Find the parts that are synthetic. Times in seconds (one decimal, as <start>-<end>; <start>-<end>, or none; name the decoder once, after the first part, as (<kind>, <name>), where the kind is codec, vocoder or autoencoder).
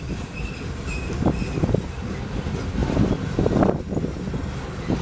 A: none